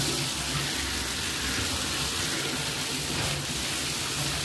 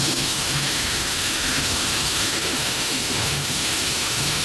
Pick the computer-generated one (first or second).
second